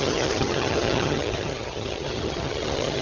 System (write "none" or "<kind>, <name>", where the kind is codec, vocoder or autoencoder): vocoder, HiFi-GAN